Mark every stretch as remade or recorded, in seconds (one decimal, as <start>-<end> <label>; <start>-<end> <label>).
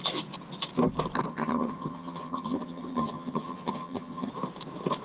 0.0-1.3 recorded; 1.3-4.3 remade; 4.3-5.0 recorded